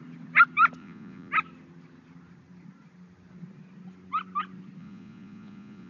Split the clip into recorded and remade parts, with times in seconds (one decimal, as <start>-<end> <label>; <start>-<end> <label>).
0.0-0.8 recorded; 0.8-1.3 remade; 1.3-4.8 recorded; 4.8-5.9 remade